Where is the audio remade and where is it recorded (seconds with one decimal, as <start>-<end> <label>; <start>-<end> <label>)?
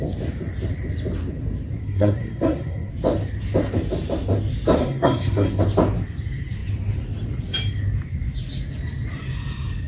0.0-1.8 recorded; 1.8-2.9 remade; 2.9-4.8 recorded; 4.8-5.6 remade; 5.6-9.9 recorded